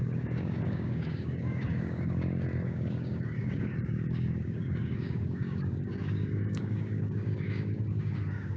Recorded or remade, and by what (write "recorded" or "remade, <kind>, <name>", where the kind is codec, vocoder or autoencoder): remade, codec, DAC